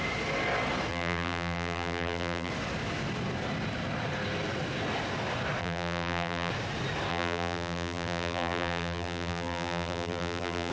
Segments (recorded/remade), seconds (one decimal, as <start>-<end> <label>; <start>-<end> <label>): 0.0-0.9 recorded; 0.9-2.5 remade; 2.5-5.6 recorded; 5.6-6.5 remade; 6.5-7.1 recorded; 7.1-10.7 remade